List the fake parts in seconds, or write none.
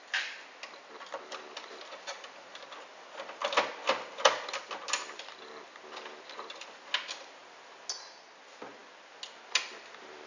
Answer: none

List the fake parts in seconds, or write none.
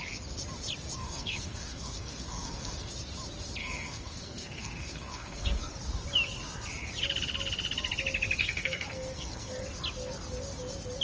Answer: 1.0-2.9 (codec, SNAC); 3.6-5.7; 8.4-9.6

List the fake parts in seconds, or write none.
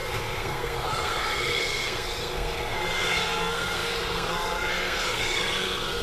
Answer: 0.0-6.0 (codec, SNAC)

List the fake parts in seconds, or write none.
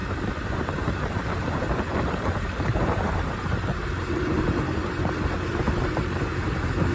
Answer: 0.0-4.8 (vocoder, BigVGAN v2); 5.5-6.9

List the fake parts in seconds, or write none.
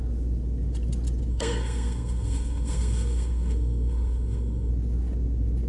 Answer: 1.3-4.7 (codec, SNAC)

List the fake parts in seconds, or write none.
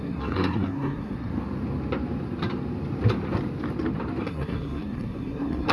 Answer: 0.0-1.3 (codec, SNAC); 4.2-5.7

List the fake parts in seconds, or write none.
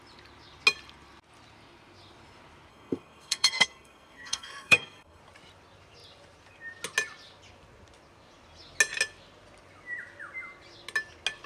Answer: 2.7-5.2 (codec, SNAC)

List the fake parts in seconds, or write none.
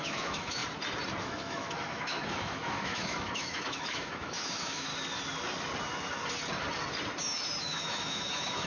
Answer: 0.0-0.6 (autoencoder, DAC-VAE); 1.2-4.9; 7.2-8.7